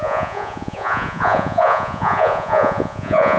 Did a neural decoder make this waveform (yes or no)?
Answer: yes